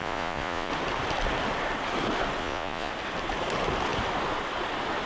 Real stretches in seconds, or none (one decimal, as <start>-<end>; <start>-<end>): 0.7-2.4; 2.9-5.1